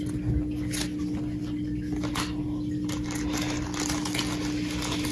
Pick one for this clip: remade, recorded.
recorded